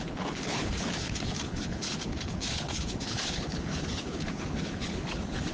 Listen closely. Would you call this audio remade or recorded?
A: remade